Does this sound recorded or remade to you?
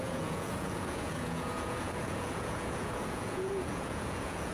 remade